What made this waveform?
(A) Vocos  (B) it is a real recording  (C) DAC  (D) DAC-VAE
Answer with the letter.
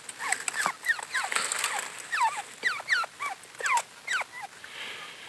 B